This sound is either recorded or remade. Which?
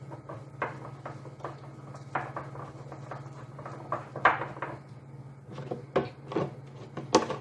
recorded